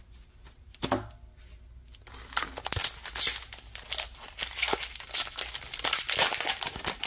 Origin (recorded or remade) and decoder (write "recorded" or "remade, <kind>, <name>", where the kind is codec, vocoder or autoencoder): recorded